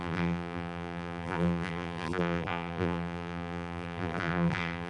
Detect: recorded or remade remade